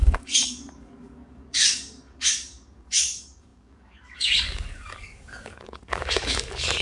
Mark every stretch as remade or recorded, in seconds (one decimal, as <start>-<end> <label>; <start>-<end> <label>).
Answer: 0.0-6.8 remade